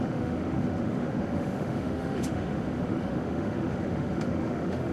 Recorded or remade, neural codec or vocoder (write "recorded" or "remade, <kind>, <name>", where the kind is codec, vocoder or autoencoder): remade, autoencoder, DAC-VAE